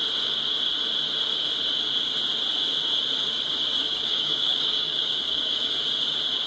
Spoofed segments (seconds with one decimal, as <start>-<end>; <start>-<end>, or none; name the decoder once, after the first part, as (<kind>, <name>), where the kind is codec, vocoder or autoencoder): 3.8-5.7 (codec, DAC)